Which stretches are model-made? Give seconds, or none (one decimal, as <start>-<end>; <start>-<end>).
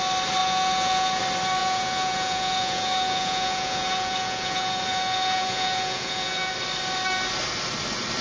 0.4-1.2; 1.6-6.5